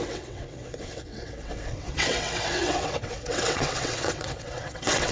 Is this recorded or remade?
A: remade